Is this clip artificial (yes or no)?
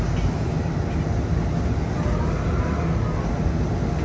no